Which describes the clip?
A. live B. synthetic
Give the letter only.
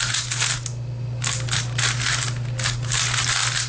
A